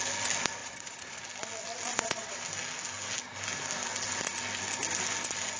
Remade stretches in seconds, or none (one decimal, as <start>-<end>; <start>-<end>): 0.6-1.2; 1.9-2.4